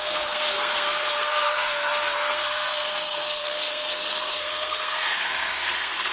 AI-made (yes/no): yes